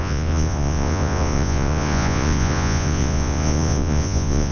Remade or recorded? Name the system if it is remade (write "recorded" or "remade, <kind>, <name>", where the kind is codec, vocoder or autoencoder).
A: remade, vocoder, Vocos